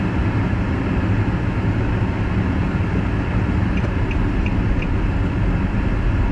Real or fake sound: real